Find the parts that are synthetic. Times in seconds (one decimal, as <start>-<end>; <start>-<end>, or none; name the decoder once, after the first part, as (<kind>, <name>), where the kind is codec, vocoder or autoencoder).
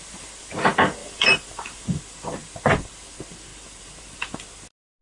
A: 1.0-2.0 (vocoder, BigVGAN v2); 3.5-4.4